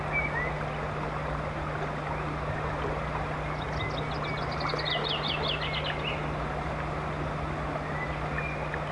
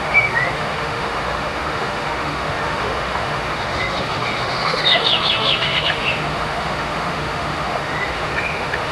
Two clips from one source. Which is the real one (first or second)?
first